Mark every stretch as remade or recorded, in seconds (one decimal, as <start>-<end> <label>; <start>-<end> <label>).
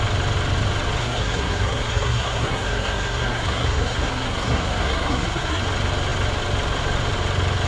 0.0-1.0 recorded; 1.0-5.6 remade; 5.6-7.7 recorded